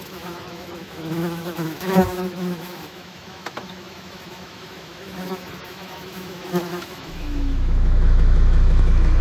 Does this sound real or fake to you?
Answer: fake